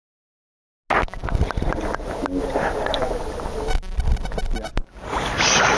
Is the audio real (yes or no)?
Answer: yes